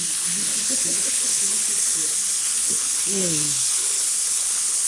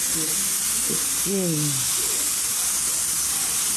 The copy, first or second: first